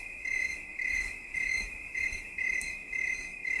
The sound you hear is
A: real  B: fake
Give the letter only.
B